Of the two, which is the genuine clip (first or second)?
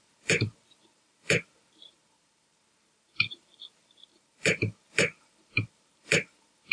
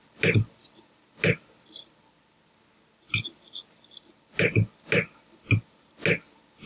second